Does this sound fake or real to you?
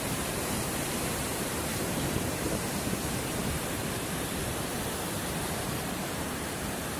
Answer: fake